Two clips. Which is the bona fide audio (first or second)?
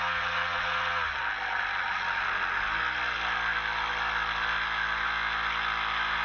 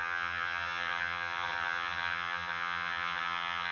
first